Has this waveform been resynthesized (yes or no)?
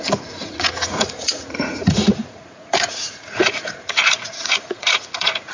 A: yes